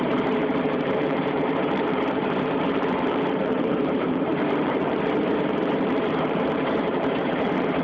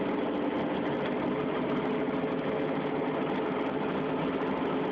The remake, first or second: first